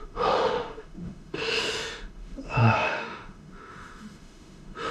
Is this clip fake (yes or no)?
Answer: yes